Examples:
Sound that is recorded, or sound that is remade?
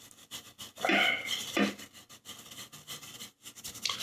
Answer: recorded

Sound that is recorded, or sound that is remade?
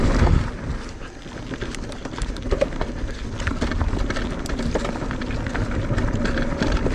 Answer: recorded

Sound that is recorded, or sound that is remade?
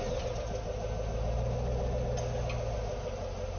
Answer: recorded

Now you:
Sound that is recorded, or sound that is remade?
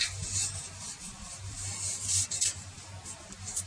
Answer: recorded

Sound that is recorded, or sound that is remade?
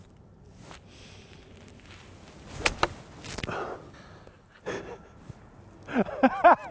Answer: recorded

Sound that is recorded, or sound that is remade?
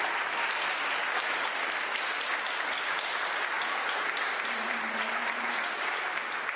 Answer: remade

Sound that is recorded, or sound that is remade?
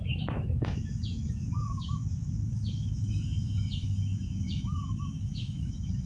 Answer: remade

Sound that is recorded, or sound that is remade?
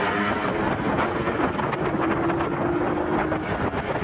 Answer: recorded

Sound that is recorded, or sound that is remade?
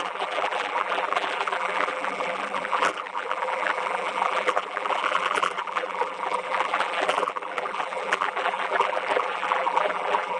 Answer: remade